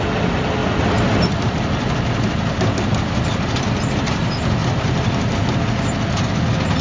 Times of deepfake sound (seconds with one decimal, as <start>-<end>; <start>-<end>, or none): none